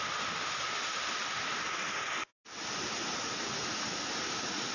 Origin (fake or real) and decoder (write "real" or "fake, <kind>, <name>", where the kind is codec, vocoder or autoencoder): real